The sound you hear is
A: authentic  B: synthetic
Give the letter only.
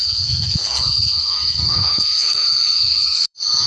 B